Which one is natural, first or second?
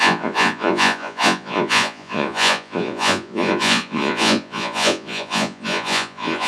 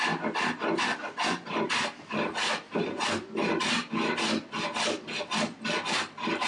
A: second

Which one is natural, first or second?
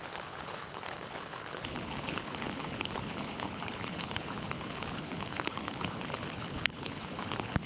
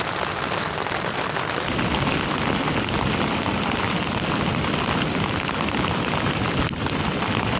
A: second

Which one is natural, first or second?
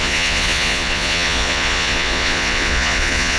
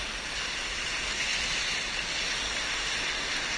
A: second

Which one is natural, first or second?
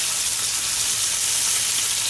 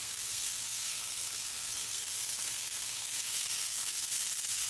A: first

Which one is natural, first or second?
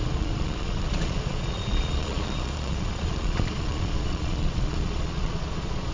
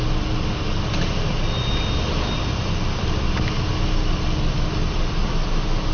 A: second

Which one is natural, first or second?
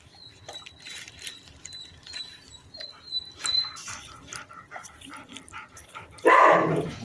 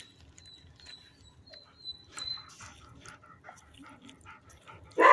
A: second